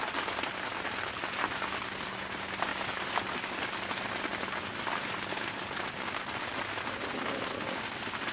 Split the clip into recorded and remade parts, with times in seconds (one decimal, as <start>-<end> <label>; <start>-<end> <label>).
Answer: 0.0-8.3 recorded